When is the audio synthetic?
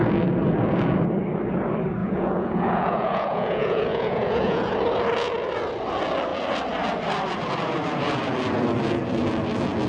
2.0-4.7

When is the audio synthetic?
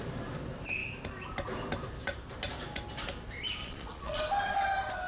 3.6-4.2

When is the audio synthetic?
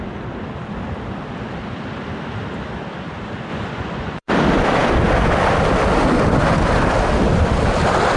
3.5-4.3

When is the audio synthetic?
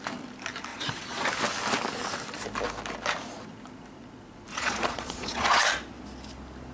0.7-1.3; 4.5-5.6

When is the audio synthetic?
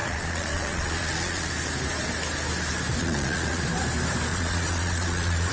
0.0-1.5; 3.0-3.6; 4.3-5.5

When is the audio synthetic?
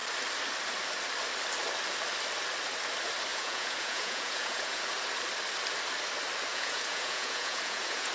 3.3-4.8; 6.5-8.1